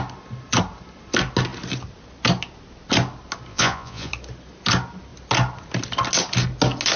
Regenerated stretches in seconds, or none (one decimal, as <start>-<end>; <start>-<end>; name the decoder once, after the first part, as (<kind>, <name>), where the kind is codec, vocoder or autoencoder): 3.5-4.1 (vocoder, Vocos)